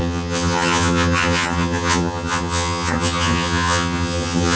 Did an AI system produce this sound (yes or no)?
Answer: yes